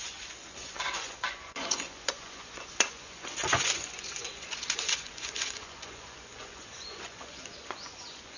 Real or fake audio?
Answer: fake